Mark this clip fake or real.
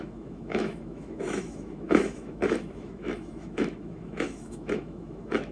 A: fake